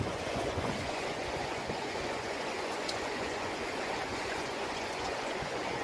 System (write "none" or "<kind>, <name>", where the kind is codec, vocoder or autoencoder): vocoder, Vocos